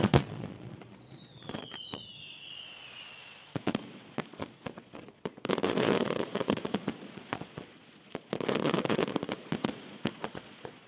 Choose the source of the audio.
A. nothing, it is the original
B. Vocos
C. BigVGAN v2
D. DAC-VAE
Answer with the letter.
B